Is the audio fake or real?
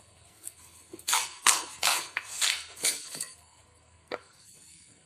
fake